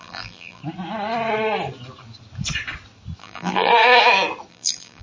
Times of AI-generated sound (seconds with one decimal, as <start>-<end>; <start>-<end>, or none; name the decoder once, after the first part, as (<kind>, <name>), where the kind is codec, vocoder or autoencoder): 0.0-0.6 (vocoder, BigVGAN v2); 3.2-3.7; 4.5-5.0